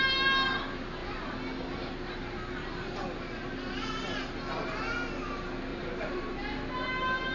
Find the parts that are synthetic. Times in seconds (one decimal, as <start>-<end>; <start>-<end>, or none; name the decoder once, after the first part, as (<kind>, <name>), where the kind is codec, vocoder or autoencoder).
5.7-6.3 (vocoder, BigVGAN v2)